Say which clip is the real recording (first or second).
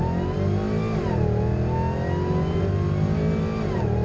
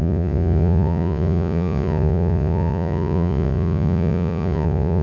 first